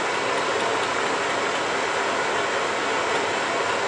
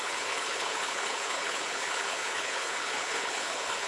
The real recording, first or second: first